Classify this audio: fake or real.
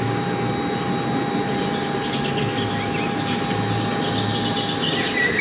real